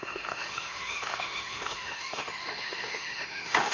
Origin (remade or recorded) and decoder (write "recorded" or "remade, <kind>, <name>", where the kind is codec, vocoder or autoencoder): remade, autoencoder, DAC-VAE